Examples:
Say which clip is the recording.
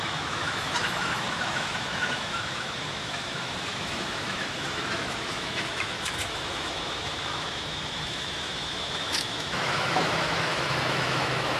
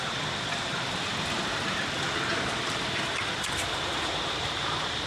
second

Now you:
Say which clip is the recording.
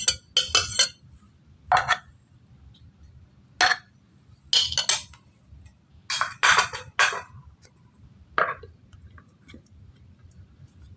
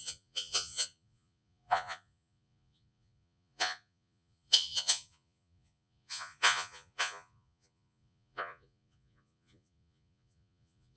first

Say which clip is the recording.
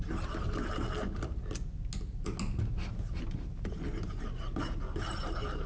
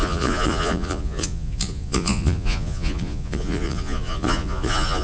first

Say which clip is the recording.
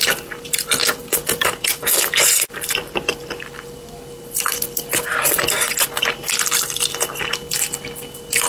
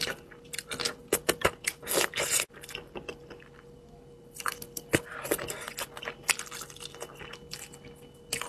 second